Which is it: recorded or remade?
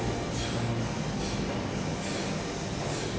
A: recorded